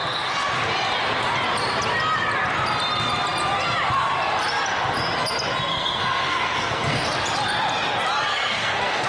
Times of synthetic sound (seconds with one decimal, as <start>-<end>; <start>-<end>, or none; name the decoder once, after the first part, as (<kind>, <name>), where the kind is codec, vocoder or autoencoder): 5.7-7.0 (codec, SNAC); 8.3-9.1